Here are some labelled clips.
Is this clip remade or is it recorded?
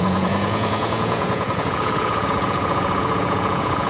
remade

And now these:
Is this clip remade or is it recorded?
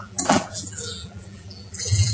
remade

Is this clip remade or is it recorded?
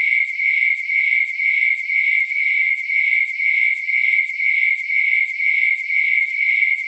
recorded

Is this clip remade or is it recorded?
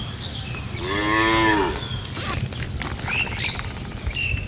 recorded